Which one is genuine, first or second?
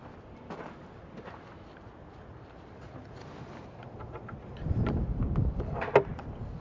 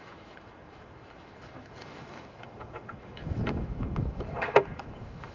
first